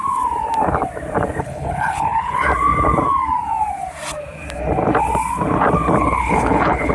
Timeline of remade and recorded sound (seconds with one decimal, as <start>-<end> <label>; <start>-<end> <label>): 0.0-1.4 recorded; 1.4-2.5 remade; 2.5-6.0 recorded; 6.0-6.9 remade